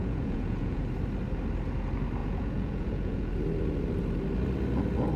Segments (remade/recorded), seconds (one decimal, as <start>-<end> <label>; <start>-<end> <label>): 0.0-0.8 remade; 0.8-2.2 recorded; 2.2-3.3 remade; 3.3-5.2 recorded

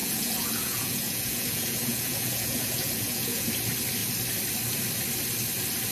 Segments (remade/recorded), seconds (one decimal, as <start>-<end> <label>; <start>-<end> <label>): 0.0-3.5 remade; 3.5-5.9 recorded

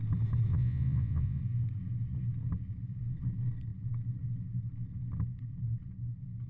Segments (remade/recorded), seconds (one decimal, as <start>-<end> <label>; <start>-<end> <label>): 0.0-0.5 recorded; 0.5-1.4 remade; 1.4-6.5 recorded

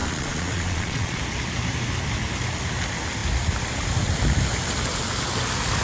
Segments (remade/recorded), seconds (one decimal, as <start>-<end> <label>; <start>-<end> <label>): 0.0-1.2 remade; 1.2-5.8 recorded

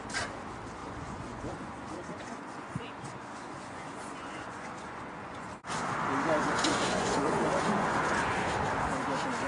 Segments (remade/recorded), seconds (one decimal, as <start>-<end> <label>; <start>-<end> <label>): 0.0-0.8 recorded; 0.8-5.5 remade; 5.5-6.4 recorded; 6.4-8.5 remade; 8.5-9.5 recorded

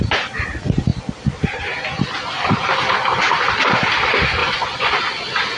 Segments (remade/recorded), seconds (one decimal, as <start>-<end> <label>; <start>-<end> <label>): 0.0-4.4 recorded; 4.4-4.9 remade; 4.9-5.6 recorded